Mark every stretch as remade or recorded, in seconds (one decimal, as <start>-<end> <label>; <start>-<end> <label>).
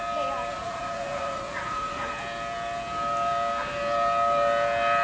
0.0-0.5 recorded; 0.5-2.1 remade; 2.1-5.0 recorded